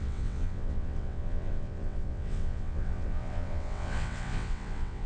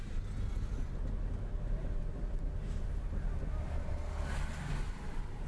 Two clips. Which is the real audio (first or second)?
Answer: second